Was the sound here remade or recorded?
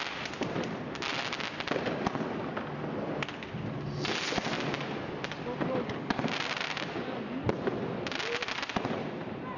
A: recorded